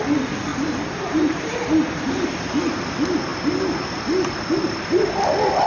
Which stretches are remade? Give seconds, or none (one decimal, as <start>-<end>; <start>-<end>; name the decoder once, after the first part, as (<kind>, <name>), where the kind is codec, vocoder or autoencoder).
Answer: 0.5-2.6 (vocoder, BigVGAN v2)